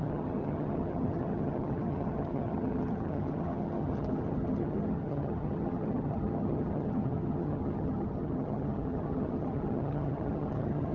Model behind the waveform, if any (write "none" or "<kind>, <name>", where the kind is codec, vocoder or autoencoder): vocoder, HiFi-GAN